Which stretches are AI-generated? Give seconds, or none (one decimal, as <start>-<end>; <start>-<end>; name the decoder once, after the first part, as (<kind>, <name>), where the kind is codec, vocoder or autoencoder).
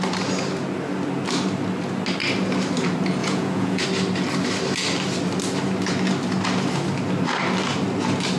3.2-3.8 (vocoder, Vocos)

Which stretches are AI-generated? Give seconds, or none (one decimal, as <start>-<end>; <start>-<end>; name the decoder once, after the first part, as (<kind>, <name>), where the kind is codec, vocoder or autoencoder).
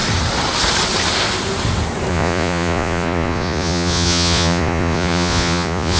2.1-6.0 (vocoder, Vocos)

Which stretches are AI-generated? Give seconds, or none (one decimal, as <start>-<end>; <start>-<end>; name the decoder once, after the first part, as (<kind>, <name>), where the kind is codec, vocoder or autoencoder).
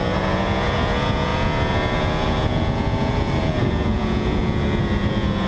0.0-5.5 (vocoder, Vocos)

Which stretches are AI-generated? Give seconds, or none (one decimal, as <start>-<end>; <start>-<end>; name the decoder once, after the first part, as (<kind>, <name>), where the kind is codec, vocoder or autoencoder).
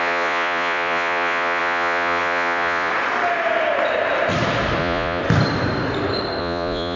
0.0-2.9 (vocoder, Vocos); 4.8-5.2; 6.4-7.0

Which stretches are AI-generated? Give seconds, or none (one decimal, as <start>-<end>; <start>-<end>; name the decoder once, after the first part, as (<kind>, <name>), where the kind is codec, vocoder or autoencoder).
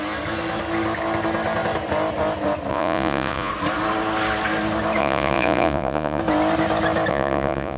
2.7-3.5 (vocoder, Vocos); 5.0-6.2; 7.1-7.8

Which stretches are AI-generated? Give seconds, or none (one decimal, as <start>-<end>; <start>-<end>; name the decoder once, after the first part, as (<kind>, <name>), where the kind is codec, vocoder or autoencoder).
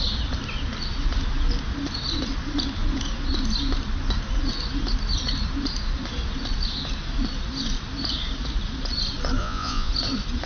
9.4-9.9 (vocoder, Vocos)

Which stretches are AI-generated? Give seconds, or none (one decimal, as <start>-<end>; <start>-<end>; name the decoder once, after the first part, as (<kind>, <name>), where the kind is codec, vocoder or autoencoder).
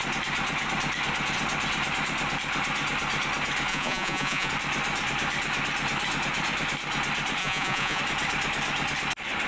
3.7-4.5 (vocoder, Vocos); 7.4-8.0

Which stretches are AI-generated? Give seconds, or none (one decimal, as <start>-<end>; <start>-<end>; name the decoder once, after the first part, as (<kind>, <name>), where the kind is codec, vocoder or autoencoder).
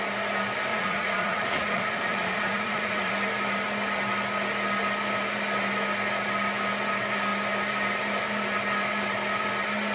0.7-3.1 (vocoder, Vocos)